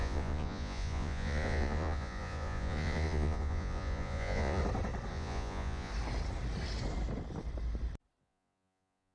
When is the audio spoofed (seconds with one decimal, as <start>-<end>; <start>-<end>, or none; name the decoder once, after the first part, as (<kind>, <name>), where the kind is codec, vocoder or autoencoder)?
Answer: 0.0-4.6 (vocoder, Vocos); 5.1-5.9; 8.2-9.1